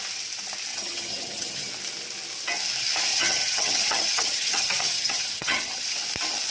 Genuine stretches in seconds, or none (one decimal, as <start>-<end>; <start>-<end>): 0.0-0.7; 1.7-3.1; 5.8-6.5